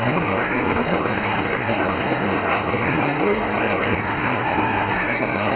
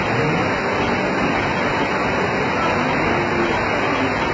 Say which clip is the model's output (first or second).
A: first